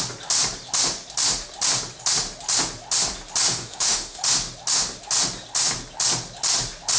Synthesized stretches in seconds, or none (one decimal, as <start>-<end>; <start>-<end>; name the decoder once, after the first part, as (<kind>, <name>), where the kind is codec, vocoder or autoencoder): 3.5-4.2 (autoencoder, DAC-VAE)